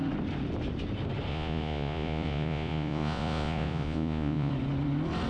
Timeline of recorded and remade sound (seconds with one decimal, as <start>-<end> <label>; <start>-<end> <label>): 0.0-1.3 recorded; 1.3-4.5 remade; 4.5-5.3 recorded